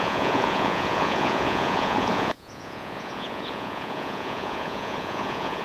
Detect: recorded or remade remade